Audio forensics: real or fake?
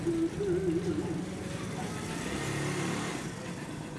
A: real